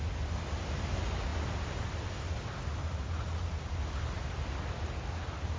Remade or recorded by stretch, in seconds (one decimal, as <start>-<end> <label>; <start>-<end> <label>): 0.0-5.6 recorded